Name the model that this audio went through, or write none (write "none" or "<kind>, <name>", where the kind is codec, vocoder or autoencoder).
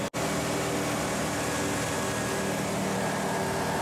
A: none